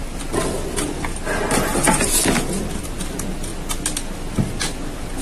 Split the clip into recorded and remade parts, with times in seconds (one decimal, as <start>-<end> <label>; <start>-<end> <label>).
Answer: 0.0-5.2 recorded